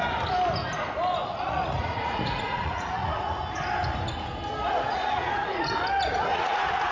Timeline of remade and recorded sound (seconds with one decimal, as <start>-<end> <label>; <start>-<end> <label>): 0.0-1.2 recorded; 1.2-3.4 remade; 3.4-4.9 recorded; 4.9-5.7 remade; 5.7-6.3 recorded; 6.3-6.9 remade